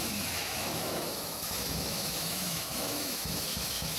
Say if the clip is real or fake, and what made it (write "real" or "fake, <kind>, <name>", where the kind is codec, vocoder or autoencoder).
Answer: fake, autoencoder, DAC-VAE